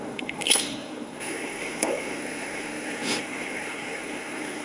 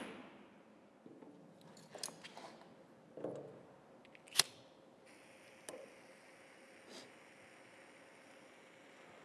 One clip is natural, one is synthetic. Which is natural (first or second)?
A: second